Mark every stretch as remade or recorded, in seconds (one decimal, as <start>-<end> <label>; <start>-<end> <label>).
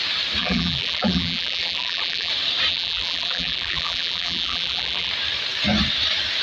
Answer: 0.0-0.4 recorded; 0.4-2.3 remade; 2.3-2.7 recorded; 2.7-5.1 remade; 5.1-6.4 recorded